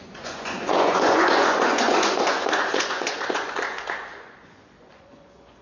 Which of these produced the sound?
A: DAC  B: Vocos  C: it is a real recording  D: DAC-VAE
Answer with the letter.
B